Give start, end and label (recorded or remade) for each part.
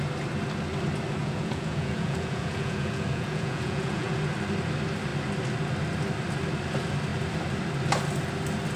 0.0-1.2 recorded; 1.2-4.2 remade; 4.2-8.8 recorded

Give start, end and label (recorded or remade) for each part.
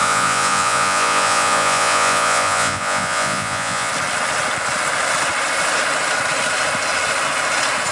0.0-3.9 remade; 3.9-7.9 recorded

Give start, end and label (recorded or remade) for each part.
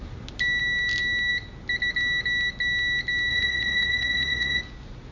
0.0-3.3 recorded; 3.3-4.6 remade; 4.6-5.1 recorded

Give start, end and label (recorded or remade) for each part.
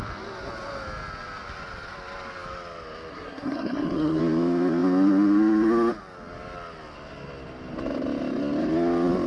0.0-3.1 recorded; 3.1-4.2 remade; 4.2-9.3 recorded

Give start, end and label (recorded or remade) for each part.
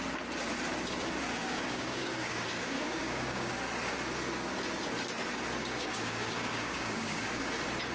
0.0-1.4 recorded; 1.4-3.5 remade; 3.5-5.6 recorded; 5.6-7.4 remade; 7.4-7.9 recorded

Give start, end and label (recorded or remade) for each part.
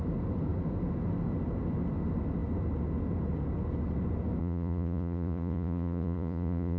0.0-4.4 recorded; 4.4-6.8 remade